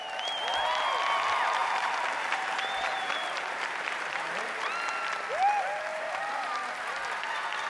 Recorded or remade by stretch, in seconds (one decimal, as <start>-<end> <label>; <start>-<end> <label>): 0.0-1.6 recorded; 1.6-4.7 remade; 4.7-5.9 recorded; 5.9-6.5 remade; 6.5-7.7 recorded

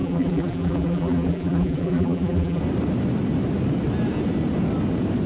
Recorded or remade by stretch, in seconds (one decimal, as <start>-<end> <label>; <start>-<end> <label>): 0.0-2.6 remade; 2.6-5.3 recorded